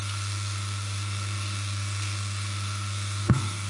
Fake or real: fake